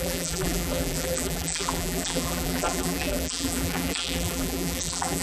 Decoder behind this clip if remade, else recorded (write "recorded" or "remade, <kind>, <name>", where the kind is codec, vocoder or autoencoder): remade, vocoder, BigVGAN v2